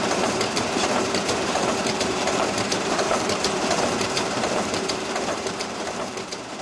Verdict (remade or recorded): remade